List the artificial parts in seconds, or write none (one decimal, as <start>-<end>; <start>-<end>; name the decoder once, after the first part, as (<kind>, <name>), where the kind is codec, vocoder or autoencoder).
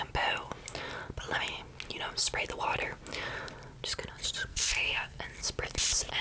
4.5-5.2 (codec, SNAC)